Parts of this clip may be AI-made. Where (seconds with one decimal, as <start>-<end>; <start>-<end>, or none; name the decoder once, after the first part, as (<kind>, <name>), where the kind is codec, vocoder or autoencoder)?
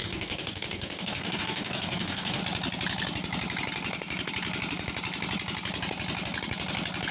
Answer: 0.0-2.4 (codec, DAC)